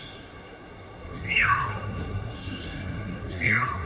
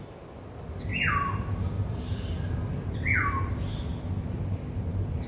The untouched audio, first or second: second